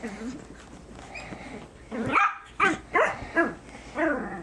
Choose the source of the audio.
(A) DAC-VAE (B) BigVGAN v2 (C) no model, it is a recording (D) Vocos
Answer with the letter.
C